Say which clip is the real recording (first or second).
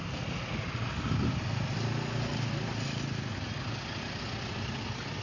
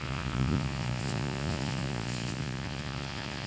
first